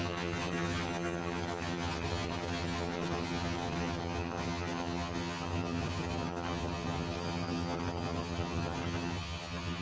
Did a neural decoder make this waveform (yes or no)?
yes